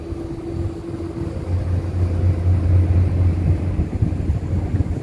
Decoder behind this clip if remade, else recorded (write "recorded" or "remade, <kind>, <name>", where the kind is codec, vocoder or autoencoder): recorded